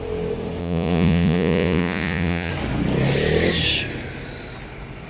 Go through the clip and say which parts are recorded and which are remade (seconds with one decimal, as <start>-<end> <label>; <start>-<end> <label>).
0.0-0.6 recorded; 0.6-2.5 remade; 2.5-5.1 recorded